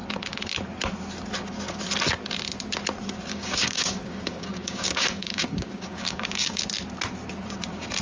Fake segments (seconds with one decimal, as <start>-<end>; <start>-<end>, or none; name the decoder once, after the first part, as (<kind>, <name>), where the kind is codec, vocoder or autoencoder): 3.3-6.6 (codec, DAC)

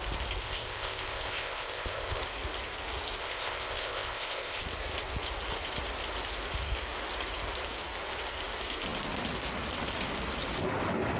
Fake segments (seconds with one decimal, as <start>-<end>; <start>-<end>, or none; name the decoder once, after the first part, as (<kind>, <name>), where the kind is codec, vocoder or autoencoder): 0.4-2.2 (codec, ZipCodec); 3.2-4.6

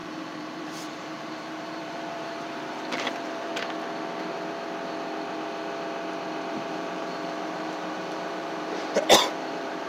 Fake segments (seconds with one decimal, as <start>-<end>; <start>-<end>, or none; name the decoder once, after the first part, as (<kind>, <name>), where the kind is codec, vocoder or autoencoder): 0.0-3.5 (vocoder, BigVGAN v2); 6.5-9.9

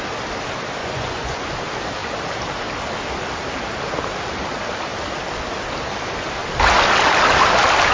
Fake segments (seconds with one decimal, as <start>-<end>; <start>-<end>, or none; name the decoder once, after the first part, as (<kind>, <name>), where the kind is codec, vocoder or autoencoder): 0.8-1.5 (vocoder, Vocos)

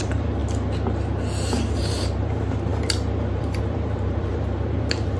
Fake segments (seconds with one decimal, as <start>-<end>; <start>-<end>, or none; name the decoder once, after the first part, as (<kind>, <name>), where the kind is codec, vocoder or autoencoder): 0.0-0.4 (vocoder, BigVGAN v2); 1.8-5.2

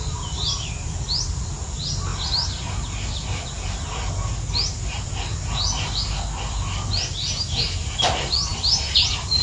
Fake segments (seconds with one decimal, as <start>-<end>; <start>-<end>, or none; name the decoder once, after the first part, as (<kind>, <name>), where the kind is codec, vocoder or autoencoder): none

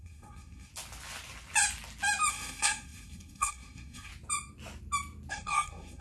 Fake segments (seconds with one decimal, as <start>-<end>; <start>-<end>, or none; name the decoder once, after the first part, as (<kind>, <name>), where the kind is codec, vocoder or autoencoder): 0.0-0.7 (codec, SNAC); 2.3-4.1; 5.3-6.0

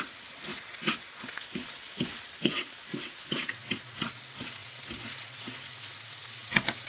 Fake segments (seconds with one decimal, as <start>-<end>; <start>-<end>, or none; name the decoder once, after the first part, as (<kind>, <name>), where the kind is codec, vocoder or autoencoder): 0.0-6.9 (vocoder, WaveNeXt)